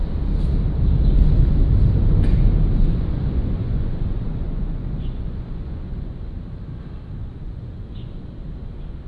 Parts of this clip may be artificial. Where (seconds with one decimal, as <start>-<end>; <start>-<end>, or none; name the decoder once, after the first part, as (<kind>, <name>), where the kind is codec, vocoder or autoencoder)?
2.8-6.4 (vocoder, Vocos); 7.2-8.2